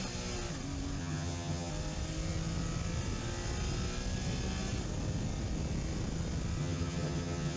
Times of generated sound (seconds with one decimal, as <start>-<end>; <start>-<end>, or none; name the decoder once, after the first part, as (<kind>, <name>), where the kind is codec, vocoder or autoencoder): 1.0-1.7 (vocoder, HiFi-GAN); 6.6-7.6